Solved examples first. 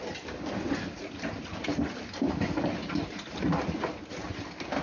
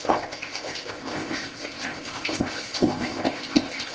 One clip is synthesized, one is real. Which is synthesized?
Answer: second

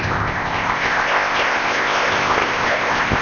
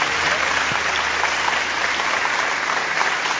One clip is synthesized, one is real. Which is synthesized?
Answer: first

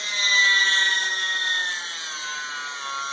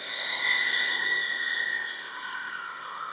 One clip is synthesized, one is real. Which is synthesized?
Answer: second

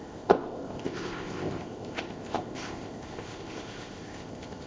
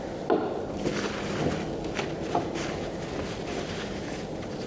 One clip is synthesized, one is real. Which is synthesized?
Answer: first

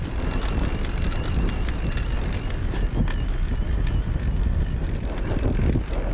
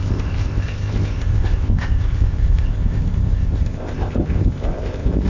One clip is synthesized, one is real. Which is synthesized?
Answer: second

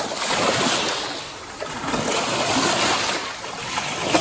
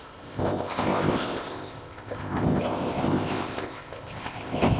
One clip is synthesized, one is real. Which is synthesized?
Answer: second